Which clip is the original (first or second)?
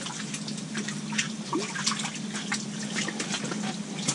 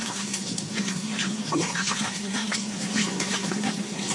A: first